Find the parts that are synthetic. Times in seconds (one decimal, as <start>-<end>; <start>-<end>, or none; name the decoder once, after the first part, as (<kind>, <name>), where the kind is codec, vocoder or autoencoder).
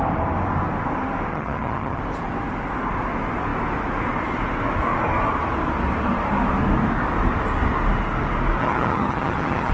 1.3-2.0 (vocoder, HiFi-GAN); 8.6-9.7